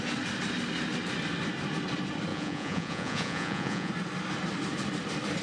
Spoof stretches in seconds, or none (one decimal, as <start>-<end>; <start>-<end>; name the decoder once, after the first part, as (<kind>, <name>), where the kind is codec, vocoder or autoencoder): 2.3-3.9 (vocoder, Vocos)